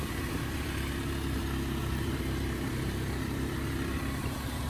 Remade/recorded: remade